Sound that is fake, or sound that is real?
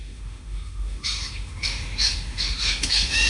fake